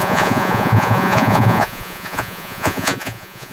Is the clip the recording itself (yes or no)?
no